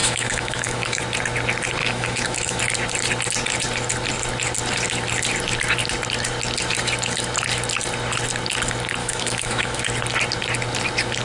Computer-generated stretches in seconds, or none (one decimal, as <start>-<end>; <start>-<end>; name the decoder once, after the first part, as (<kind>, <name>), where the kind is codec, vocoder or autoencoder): 0.0-1.0 (autoencoder, DAC-VAE); 1.8-2.6; 9.0-9.8

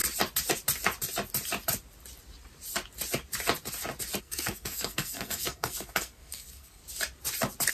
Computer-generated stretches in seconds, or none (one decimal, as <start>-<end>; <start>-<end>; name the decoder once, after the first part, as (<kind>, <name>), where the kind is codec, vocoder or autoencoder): 4.2-6.8 (codec, SNAC)